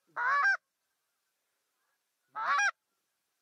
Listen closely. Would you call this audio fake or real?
fake